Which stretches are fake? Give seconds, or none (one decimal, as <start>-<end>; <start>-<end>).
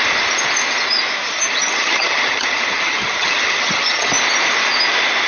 1.2-4.1